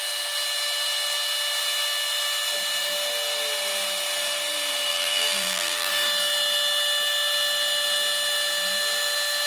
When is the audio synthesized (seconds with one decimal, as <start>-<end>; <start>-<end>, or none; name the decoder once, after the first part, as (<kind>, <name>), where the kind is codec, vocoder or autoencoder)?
4.9-5.9 (vocoder, BigVGAN v2)